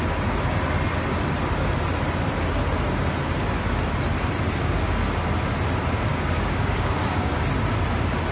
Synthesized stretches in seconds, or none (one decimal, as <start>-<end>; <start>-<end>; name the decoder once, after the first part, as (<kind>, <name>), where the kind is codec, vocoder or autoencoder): 6.1-7.4 (codec, DAC)